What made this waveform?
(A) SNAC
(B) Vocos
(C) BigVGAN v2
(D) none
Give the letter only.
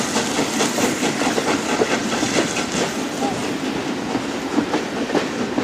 D